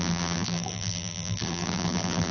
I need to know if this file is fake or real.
fake